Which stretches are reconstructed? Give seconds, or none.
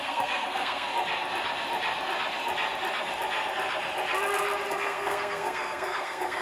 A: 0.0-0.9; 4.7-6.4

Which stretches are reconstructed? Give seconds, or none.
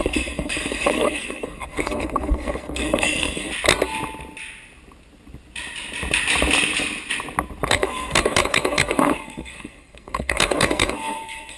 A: 0.0-3.5; 7.7-11.6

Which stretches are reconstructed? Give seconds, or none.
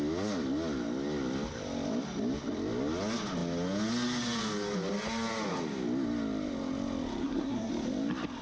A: 7.2-7.7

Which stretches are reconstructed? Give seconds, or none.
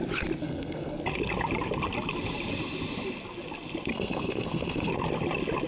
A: 0.4-1.0; 3.9-4.9